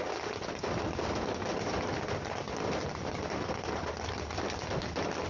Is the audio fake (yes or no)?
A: no